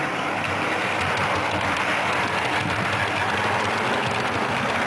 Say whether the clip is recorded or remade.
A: recorded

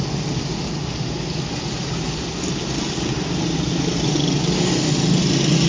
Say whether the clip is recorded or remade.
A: recorded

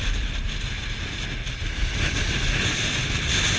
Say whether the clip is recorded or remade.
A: recorded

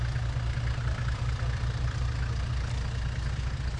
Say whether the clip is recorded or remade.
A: recorded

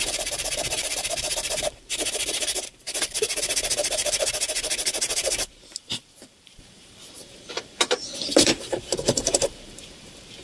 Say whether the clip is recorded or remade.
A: remade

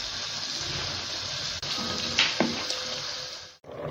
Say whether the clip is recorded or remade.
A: recorded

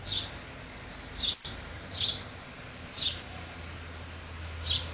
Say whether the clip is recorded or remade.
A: recorded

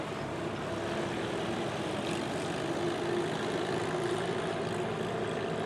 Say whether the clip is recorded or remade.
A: recorded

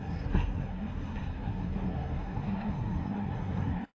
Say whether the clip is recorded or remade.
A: remade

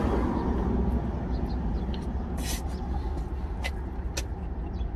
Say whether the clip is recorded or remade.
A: recorded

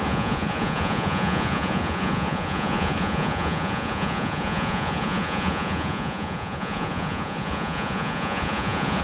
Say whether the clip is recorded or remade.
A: remade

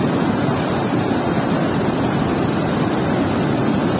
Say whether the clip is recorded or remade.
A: recorded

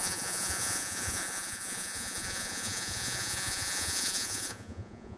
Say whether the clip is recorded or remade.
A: remade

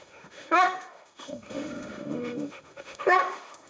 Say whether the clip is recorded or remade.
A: remade